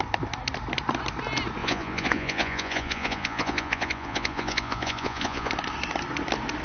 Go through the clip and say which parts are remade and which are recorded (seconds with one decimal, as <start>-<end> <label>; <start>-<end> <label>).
0.0-1.6 recorded; 1.6-5.5 remade; 5.5-6.6 recorded